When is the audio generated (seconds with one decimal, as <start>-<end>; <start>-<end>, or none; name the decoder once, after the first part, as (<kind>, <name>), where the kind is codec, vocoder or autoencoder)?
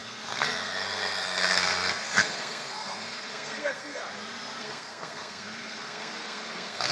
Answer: 0.0-4.0 (codec, SNAC); 4.6-6.9